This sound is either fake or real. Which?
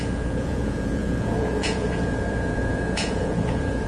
fake